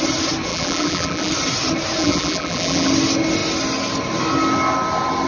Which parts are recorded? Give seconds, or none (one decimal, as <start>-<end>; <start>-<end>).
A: 0.0-0.5; 1.3-2.0; 2.9-5.3